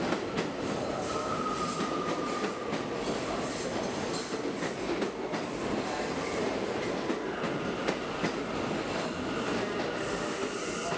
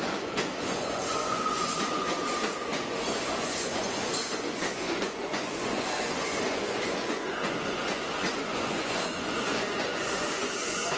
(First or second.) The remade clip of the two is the second